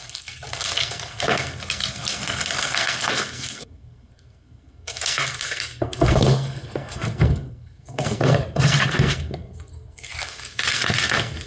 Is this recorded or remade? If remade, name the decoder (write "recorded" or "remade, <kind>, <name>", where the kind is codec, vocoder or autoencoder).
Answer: remade, codec, SNAC